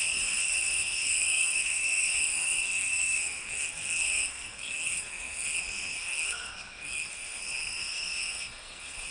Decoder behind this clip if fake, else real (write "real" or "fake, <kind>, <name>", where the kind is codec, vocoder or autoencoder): fake, codec, SNAC